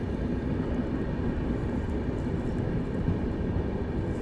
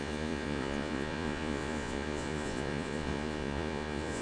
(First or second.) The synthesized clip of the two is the second